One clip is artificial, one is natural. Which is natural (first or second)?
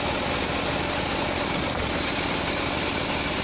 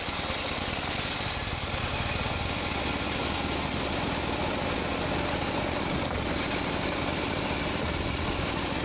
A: first